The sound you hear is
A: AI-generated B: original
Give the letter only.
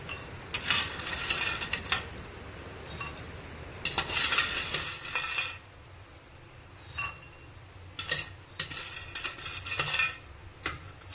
B